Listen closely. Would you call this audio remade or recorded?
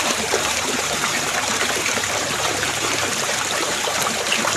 remade